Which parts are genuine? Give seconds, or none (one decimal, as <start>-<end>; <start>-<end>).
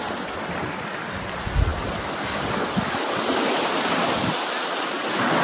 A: 0.0-5.4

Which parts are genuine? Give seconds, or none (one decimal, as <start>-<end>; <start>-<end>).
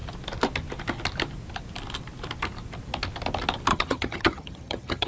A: 0.0-3.7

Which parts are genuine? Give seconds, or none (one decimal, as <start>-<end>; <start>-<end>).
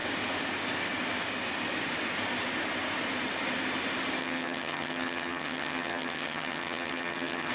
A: 0.0-4.2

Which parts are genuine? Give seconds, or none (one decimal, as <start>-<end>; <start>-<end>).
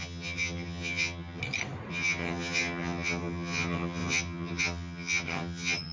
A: 1.4-1.9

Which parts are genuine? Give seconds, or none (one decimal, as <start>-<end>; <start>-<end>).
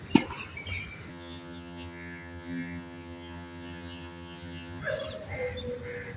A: 0.0-1.1; 4.8-6.2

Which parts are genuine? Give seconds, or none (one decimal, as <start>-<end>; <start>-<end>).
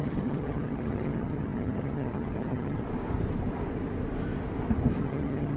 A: 2.8-5.0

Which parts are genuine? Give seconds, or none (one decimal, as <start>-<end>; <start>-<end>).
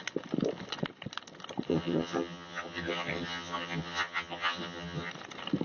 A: 0.0-1.7; 5.1-5.6